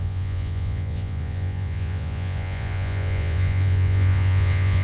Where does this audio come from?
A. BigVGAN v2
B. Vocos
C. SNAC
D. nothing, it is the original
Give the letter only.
B